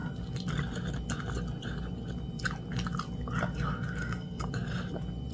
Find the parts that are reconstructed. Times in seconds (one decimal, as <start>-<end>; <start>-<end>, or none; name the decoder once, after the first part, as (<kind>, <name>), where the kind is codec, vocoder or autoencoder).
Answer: 4.0-4.5 (codec, SNAC)